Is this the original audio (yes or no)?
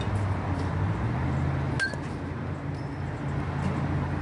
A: yes